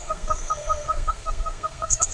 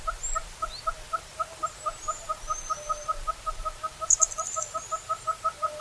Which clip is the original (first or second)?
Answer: second